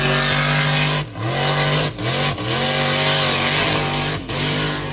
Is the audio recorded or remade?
recorded